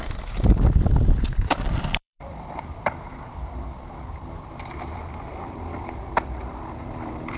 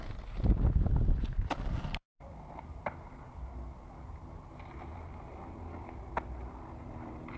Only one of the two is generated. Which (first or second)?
first